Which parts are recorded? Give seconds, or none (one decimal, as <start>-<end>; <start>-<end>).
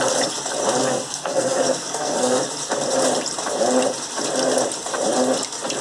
0.0-0.8; 2.5-5.8